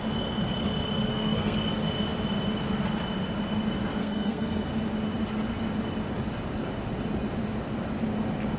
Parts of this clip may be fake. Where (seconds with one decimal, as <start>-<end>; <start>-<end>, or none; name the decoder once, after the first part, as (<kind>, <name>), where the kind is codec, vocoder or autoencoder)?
1.1-1.7 (codec, SNAC); 4.0-4.7